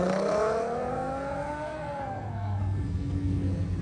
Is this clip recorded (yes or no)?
no